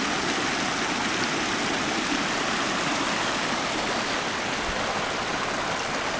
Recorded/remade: recorded